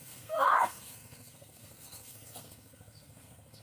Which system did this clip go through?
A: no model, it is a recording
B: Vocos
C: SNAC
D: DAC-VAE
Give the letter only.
C